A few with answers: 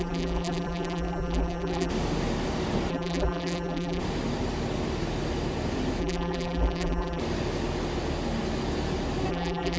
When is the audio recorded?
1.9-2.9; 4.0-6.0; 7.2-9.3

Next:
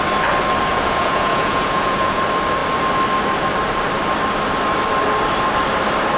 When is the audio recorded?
0.0-0.7; 2.2-6.2

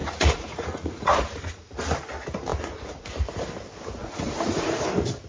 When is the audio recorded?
1.7-2.5; 3.1-4.0; 4.8-5.3

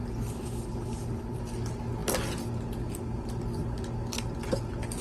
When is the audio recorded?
0.0-5.0

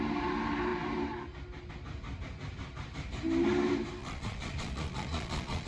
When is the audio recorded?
0.0-4.0

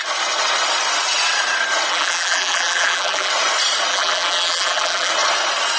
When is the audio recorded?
0.0-1.9; 3.3-3.9; 5.1-5.8

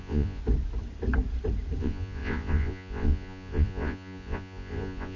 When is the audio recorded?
0.4-1.8